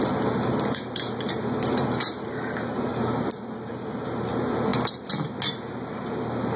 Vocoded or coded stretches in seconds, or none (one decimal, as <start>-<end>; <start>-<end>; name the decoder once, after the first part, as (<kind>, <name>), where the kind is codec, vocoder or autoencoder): none